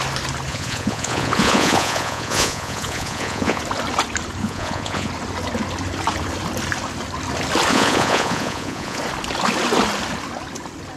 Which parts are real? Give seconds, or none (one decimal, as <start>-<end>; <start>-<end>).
0.0-0.5; 3.6-4.4; 5.1-7.7; 9.0-11.0

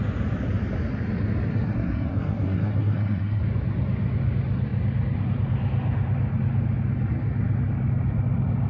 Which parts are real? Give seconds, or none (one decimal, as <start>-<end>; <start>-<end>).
0.0-1.5; 3.4-8.7

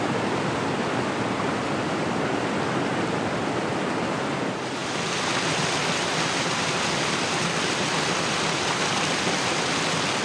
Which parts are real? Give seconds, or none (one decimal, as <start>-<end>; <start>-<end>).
0.0-10.2

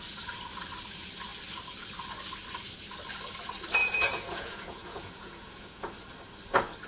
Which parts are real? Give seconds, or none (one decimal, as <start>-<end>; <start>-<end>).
0.0-3.8; 5.9-6.9

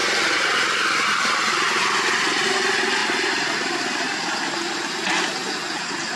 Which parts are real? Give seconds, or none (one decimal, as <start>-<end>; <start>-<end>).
0.0-3.0; 3.8-6.2

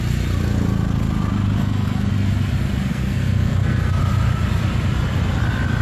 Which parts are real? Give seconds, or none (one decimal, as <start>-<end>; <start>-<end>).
0.0-1.6; 2.1-2.9; 4.0-5.8

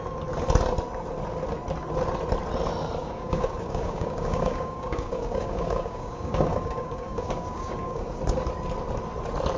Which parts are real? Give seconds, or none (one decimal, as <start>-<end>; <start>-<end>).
0.0-3.0; 8.2-9.6